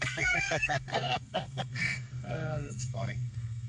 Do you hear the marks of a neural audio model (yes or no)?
yes